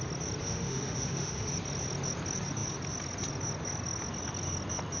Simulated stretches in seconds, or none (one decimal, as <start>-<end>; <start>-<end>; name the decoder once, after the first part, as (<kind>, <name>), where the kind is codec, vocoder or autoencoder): 0.4-1.5 (autoencoder, DAC-VAE)